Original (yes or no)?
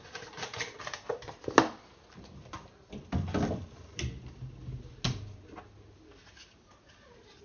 yes